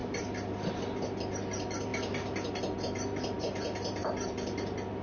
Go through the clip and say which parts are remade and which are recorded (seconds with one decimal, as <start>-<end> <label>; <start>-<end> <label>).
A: 0.0-5.0 recorded